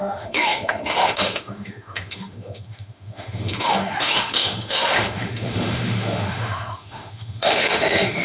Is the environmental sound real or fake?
fake